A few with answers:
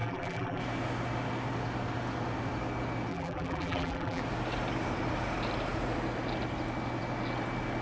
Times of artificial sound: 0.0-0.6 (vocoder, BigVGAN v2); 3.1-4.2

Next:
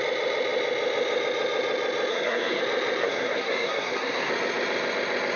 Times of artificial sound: 2.1-2.6 (codec, SNAC); 3.0-4.3

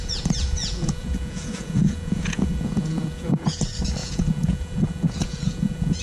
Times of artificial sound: 0.0-3.6 (vocoder, Vocos); 4.0-6.0